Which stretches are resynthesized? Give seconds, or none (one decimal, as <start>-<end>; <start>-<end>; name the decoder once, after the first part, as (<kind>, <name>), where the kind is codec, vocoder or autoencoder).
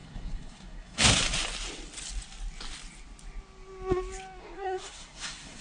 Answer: 0.0-1.2 (codec, SNAC); 4.4-5.6